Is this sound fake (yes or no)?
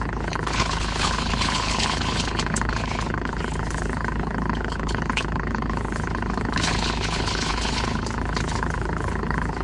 yes